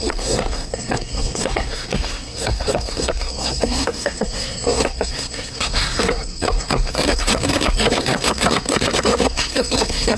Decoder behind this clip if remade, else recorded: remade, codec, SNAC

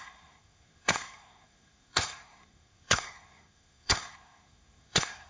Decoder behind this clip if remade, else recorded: remade, codec, SNAC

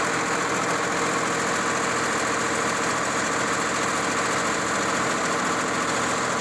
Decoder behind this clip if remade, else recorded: recorded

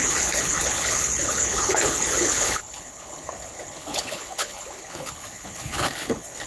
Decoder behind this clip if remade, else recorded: remade, codec, HILCodec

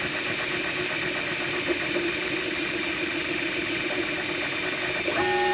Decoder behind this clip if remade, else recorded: remade, vocoder, BigVGAN v2